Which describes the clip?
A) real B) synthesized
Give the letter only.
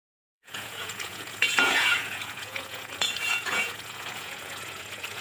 B